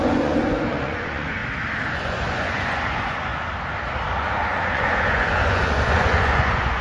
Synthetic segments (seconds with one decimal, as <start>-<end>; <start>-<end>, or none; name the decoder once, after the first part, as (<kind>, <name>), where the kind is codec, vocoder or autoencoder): 0.0-1.4 (vocoder, Vocos); 1.9-3.3; 4.2-6.8